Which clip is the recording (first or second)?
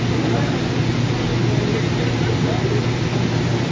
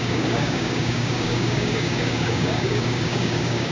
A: first